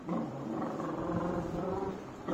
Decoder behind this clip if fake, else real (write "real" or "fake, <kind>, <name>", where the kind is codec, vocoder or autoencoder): fake, vocoder, BigVGAN v2